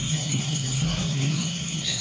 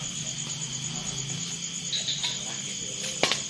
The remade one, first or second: first